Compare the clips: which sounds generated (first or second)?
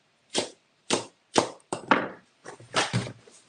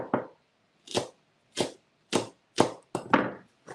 first